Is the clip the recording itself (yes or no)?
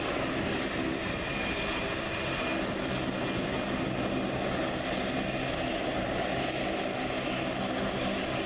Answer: yes